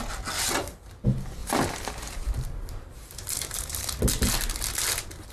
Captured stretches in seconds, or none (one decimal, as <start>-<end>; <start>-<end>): 0.0-1.4; 4.0-5.3